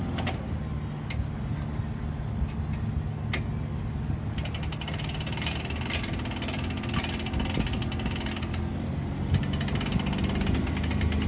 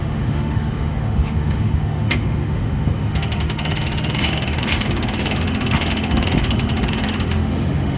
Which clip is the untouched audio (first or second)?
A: first